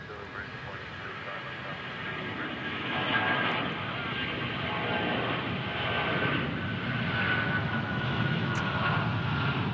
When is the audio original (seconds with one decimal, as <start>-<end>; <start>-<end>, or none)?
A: 0.0-2.6; 3.5-7.6; 8.8-9.7